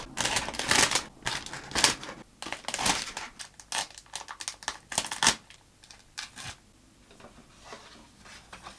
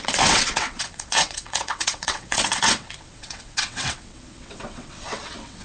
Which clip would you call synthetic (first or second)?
second